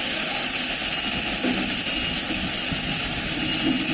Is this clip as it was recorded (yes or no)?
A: yes